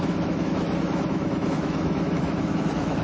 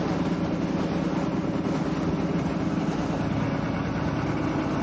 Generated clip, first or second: first